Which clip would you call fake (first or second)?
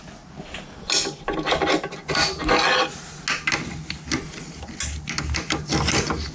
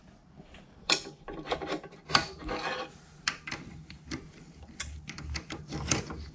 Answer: second